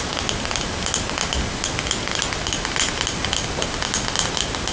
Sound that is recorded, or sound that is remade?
recorded